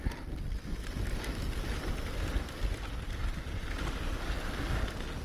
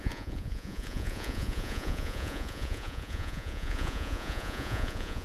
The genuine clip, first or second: first